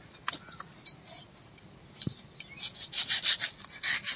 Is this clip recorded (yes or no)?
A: yes